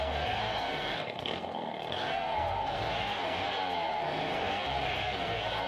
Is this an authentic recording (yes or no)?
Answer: no